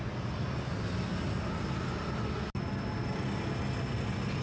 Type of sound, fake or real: real